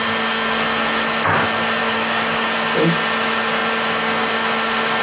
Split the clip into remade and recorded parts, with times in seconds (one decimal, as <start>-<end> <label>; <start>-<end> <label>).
0.0-1.8 recorded; 1.8-2.5 remade; 2.5-5.0 recorded